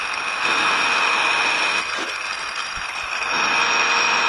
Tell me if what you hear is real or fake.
real